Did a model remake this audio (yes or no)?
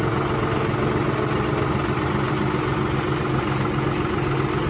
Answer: no